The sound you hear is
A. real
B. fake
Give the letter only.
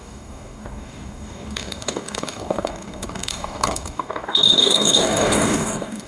B